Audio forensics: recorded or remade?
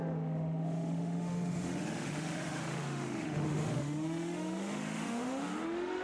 remade